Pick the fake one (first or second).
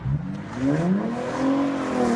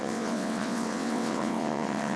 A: second